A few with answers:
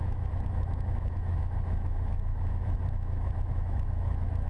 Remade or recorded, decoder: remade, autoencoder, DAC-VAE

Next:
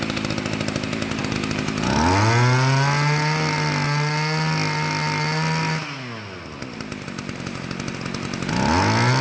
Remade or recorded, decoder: recorded